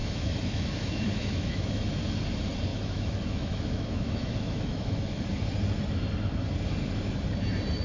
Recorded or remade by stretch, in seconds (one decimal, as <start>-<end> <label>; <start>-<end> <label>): 0.0-1.8 remade; 1.8-2.7 recorded; 2.7-5.2 remade; 5.2-7.8 recorded